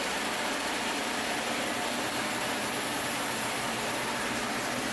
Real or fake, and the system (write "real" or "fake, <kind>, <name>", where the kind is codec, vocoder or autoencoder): real